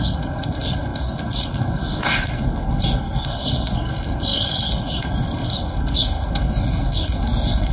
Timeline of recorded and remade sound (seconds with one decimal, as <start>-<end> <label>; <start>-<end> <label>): 0.0-7.7 remade